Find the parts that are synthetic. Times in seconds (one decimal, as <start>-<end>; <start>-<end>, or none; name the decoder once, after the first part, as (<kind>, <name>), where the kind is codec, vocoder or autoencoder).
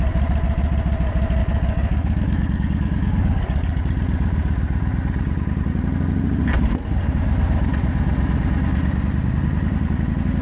1.4-3.8 (codec, DAC)